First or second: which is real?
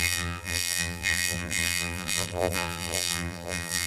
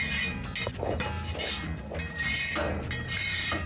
second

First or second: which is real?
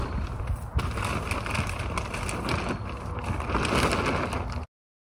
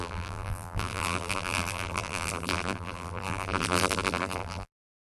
first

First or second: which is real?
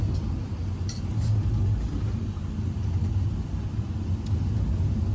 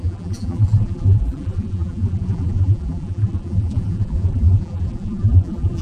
first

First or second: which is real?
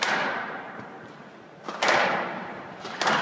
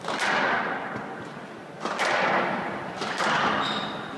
second